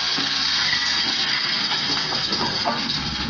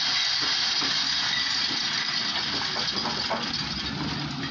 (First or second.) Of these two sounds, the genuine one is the second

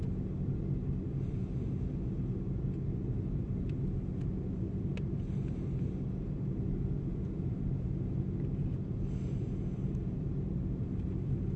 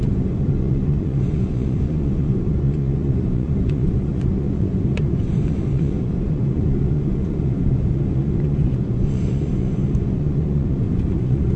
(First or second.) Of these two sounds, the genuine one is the first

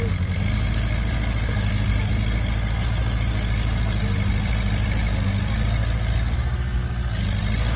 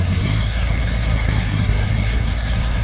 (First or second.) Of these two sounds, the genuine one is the first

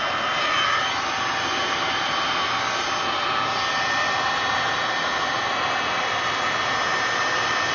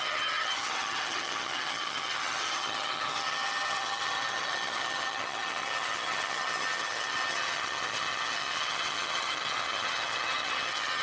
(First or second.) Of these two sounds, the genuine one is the first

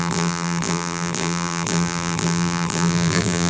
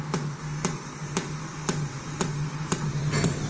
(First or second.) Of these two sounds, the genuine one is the second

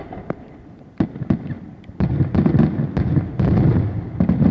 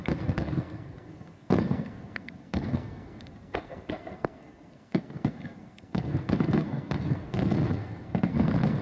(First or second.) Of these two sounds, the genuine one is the first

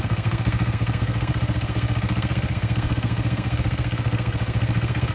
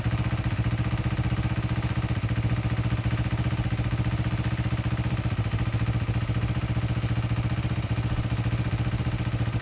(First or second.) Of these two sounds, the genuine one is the second